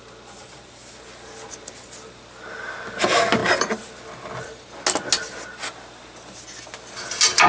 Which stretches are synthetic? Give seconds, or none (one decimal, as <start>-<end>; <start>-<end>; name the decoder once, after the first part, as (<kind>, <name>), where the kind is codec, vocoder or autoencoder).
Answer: none